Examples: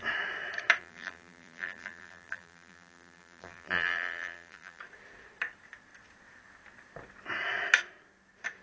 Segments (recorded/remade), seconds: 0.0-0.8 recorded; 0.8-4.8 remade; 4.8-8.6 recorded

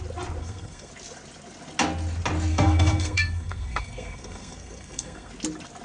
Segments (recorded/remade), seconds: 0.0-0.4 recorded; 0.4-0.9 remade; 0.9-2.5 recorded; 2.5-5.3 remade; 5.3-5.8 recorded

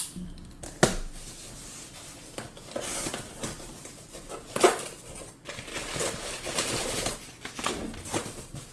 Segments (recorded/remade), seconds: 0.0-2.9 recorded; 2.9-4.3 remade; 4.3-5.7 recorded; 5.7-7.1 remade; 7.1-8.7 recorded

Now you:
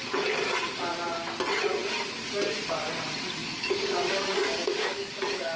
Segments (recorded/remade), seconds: 0.0-3.4 recorded; 3.4-5.6 remade

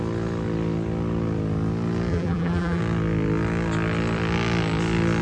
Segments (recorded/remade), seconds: 0.0-2.1 recorded; 2.1-2.8 remade; 2.8-5.2 recorded